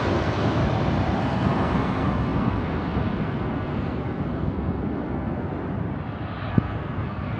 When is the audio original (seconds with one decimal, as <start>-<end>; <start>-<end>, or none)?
0.6-1.2; 5.5-6.5